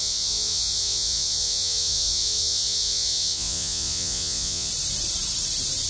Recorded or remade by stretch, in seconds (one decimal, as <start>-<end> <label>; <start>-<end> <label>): 0.0-4.7 remade; 4.7-5.9 recorded

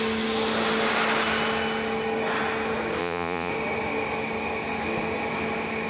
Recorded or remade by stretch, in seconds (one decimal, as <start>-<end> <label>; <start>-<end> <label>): 0.0-3.0 recorded; 3.0-3.5 remade; 3.5-5.9 recorded

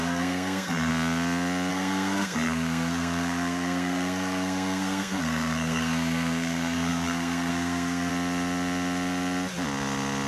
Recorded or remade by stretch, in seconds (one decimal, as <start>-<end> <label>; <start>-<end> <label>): 0.0-0.9 remade; 0.9-1.7 recorded; 1.7-8.1 remade; 8.1-10.3 recorded

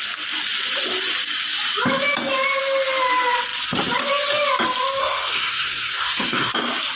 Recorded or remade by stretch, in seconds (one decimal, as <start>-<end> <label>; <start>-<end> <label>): 0.0-5.0 recorded; 5.0-6.5 remade; 6.5-7.0 recorded

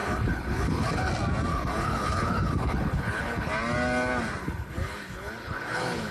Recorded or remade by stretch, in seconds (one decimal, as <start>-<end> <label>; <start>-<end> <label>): 0.0-1.1 remade; 1.1-1.5 recorded; 1.5-3.5 remade; 3.5-4.4 recorded; 4.4-6.1 remade